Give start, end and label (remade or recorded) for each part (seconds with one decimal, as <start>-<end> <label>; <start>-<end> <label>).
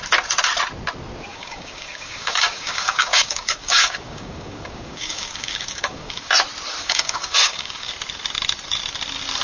0.0-1.3 recorded; 1.3-6.3 remade; 6.3-6.8 recorded; 6.8-7.9 remade; 7.9-9.4 recorded